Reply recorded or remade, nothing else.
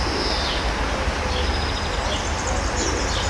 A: recorded